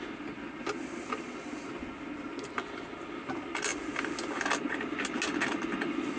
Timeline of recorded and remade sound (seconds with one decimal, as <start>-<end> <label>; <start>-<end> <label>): 0.0-6.2 recorded